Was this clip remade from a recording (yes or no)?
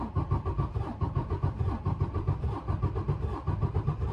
yes